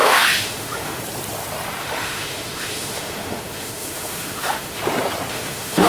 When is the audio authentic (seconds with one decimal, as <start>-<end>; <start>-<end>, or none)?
1.0-1.8; 4.8-5.3